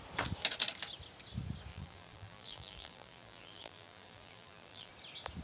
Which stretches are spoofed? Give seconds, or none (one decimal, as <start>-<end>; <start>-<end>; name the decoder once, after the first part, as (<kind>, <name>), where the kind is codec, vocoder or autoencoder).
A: 1.7-4.9 (vocoder, BigVGAN v2)